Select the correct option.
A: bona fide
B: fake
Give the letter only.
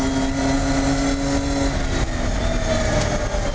A